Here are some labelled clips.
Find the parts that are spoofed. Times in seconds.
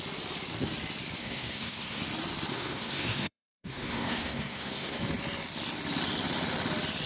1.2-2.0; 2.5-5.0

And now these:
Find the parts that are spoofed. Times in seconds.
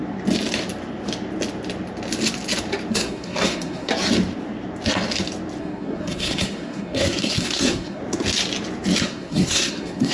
2.9-3.9; 5.6-8.0; 9.0-10.1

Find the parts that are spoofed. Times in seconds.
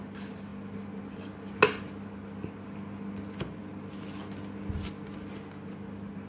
none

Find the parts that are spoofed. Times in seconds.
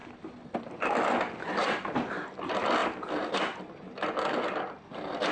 none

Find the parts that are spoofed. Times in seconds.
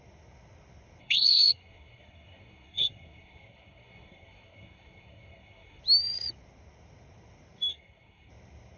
1.0-5.8; 7.7-8.3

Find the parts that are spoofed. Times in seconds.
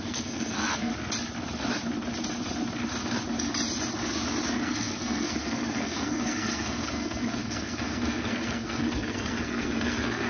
0.0-0.9; 4.6-10.3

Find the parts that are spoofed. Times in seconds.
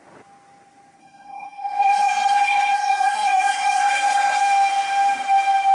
1.0-4.4